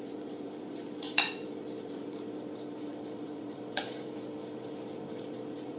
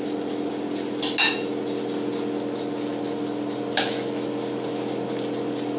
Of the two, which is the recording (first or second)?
second